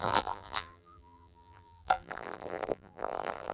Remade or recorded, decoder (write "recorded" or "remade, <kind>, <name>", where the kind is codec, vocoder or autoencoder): remade, vocoder, BigVGAN v2